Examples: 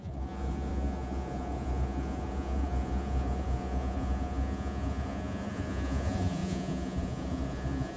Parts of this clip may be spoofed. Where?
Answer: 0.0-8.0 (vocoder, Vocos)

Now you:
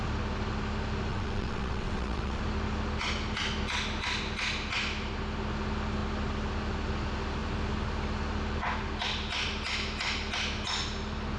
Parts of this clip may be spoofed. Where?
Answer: 1.1-2.4 (vocoder, WaveNeXt)

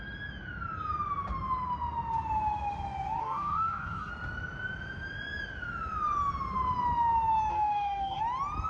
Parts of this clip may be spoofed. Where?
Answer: 3.2-4.1 (codec, DAC); 7.5-8.2

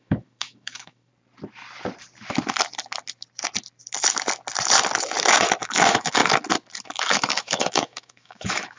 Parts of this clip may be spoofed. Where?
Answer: 0.0-1.1 (autoencoder, DAC-VAE); 5.6-6.2; 6.8-8.8

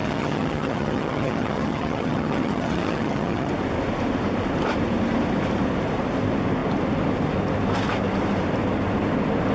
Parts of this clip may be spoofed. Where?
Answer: 0.0-3.5 (vocoder, HiFi-GAN)

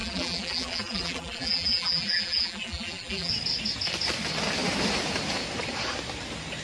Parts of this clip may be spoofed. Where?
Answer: 0.0-3.3 (vocoder, BigVGAN v2)